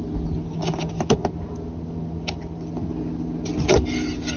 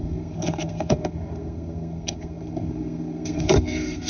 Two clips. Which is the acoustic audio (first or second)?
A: first